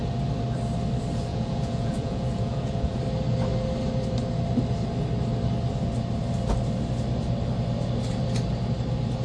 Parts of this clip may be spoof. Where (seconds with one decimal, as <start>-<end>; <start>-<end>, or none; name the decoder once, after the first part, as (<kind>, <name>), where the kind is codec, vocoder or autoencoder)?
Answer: 1.3-3.0 (vocoder, Vocos)